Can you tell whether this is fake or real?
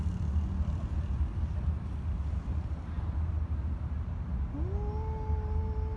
real